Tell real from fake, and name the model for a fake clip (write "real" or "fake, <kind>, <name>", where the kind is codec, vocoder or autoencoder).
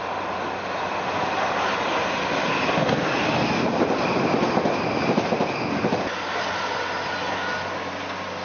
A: real